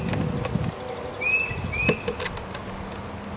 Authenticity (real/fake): real